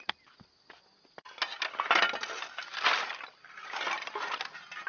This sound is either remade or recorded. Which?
recorded